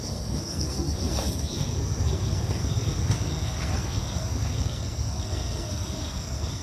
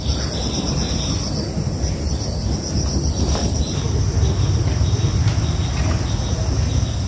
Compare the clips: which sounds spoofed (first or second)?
first